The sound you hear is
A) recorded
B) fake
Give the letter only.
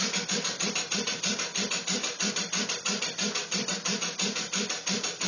A